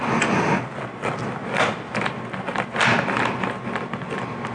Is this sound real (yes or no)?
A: yes